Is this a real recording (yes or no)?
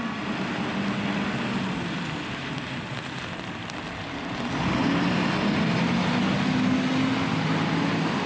yes